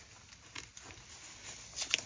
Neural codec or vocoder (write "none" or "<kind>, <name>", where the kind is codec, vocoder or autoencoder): none